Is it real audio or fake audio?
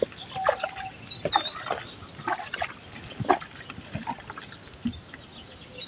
real